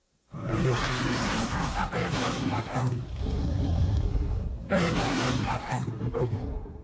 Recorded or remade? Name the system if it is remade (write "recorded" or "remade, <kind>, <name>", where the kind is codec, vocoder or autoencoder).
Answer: remade, codec, SNAC